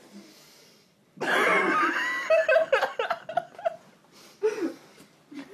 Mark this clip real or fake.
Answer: real